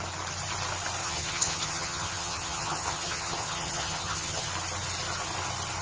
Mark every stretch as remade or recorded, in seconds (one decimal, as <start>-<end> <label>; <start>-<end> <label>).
0.0-1.0 recorded; 1.0-4.5 remade; 4.5-5.8 recorded